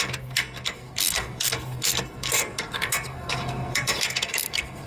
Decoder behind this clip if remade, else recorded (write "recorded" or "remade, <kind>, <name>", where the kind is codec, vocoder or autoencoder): remade, codec, SNAC